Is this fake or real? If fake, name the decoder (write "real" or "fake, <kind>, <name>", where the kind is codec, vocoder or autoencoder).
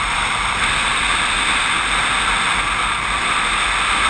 real